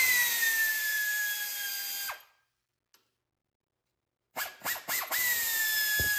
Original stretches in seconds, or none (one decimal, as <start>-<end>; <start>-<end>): 0.0-0.7; 1.7-3.4; 5.6-6.2